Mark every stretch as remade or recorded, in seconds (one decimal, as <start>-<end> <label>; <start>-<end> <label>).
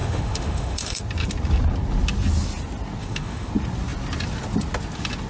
0.0-1.0 remade; 1.0-3.0 recorded; 3.0-3.5 remade; 3.5-5.3 recorded